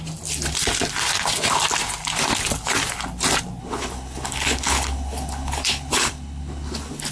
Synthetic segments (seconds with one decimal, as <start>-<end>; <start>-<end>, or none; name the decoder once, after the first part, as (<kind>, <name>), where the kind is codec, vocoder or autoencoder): 3.6-7.1 (codec, HILCodec)